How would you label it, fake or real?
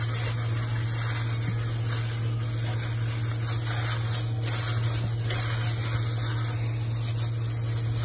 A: real